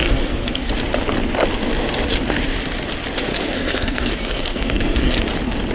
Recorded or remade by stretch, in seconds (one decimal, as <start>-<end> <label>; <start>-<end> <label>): 0.0-0.7 remade; 0.7-3.3 recorded; 3.3-5.2 remade; 5.2-5.7 recorded